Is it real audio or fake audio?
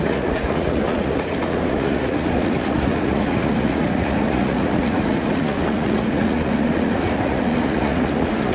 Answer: fake